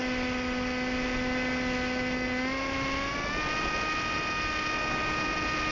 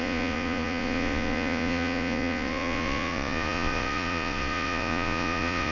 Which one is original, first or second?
first